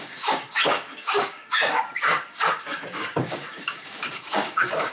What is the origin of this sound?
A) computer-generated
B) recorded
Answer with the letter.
A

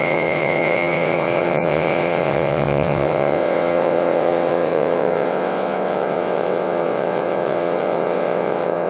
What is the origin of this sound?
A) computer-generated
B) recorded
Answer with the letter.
A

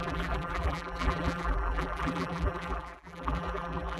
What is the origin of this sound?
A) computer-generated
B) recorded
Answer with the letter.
A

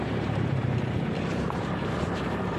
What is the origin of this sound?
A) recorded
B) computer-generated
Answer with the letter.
B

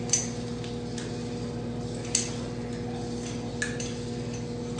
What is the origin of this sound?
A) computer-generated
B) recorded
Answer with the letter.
B